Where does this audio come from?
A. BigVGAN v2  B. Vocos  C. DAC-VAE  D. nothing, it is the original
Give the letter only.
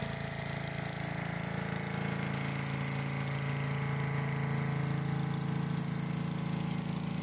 D